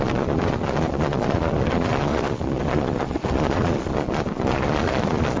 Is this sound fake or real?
fake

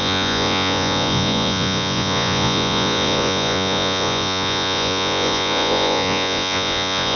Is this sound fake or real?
fake